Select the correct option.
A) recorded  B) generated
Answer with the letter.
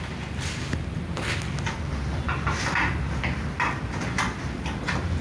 A